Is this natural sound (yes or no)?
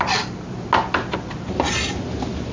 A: yes